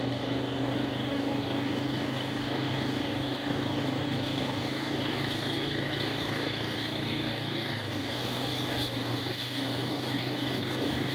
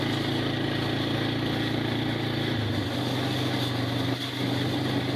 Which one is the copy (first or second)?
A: first